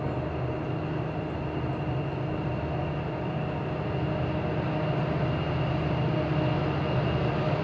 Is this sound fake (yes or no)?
no